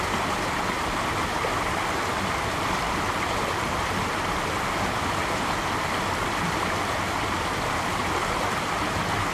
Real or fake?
real